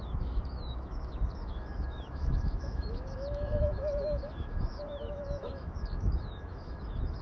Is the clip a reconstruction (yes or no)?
yes